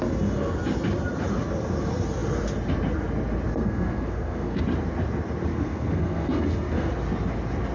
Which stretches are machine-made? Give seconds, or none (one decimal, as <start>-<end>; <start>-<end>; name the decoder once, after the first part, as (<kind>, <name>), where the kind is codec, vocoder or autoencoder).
3.5-4.6 (codec, SNAC); 5.5-6.9